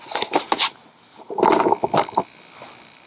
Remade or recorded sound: recorded